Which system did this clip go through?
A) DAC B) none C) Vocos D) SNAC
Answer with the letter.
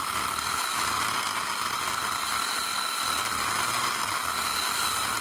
B